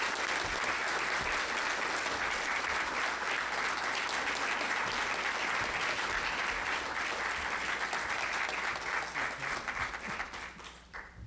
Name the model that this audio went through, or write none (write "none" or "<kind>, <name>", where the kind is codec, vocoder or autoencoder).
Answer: none